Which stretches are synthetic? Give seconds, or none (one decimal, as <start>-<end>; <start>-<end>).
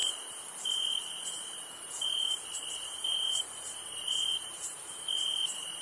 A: 0.0-5.8